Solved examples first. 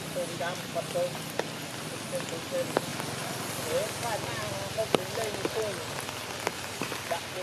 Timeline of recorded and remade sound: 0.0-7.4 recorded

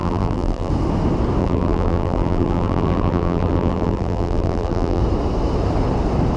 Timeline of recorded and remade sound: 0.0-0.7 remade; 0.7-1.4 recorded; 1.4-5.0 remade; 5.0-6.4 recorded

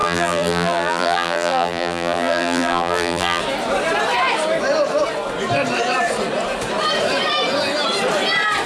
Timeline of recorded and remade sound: 0.0-3.4 remade; 3.4-8.7 recorded

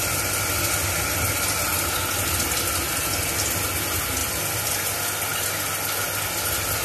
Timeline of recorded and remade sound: 0.0-4.2 recorded; 4.2-5.0 remade; 5.0-6.8 recorded